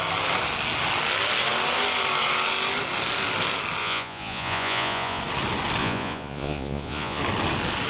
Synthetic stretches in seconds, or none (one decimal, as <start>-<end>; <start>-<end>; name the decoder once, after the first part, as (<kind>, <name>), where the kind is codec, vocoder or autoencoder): 3.8-5.2 (vocoder, Vocos); 5.8-7.2